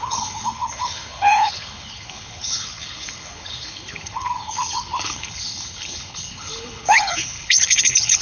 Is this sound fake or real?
fake